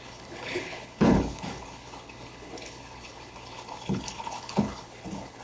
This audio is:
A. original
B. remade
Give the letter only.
B